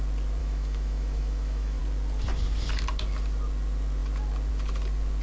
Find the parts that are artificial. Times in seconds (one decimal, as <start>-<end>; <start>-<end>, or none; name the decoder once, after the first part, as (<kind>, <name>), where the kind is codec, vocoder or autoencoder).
0.4-1.8 (autoencoder, DAC-VAE)